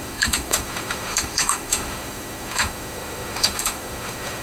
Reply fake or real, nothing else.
fake